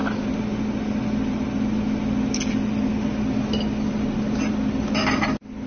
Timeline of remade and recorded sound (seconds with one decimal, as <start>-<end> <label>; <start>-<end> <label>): 0.0-5.7 recorded